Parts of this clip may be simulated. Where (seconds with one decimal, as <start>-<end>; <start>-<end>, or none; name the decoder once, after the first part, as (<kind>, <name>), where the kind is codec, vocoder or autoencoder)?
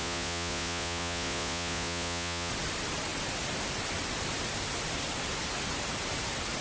0.0-2.5 (vocoder, Vocos)